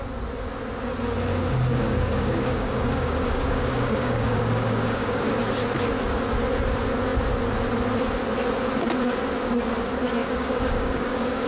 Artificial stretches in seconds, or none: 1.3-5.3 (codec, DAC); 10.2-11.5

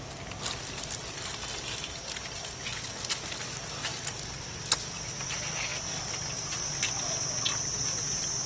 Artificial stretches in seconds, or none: none

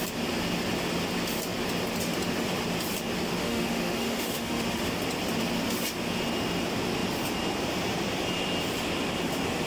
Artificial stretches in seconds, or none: 3.4-4.9 (autoencoder, DAC-VAE)